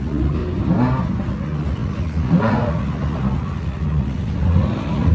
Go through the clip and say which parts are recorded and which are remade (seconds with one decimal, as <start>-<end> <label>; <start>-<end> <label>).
0.0-0.4 remade; 0.4-1.3 recorded; 1.3-5.1 remade